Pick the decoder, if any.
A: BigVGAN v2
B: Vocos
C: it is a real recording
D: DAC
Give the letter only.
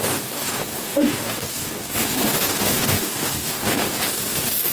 D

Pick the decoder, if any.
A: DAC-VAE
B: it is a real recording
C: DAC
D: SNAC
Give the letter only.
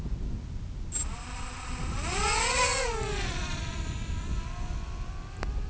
B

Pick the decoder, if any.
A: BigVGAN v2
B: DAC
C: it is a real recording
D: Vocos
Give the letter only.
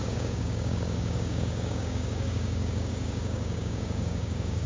B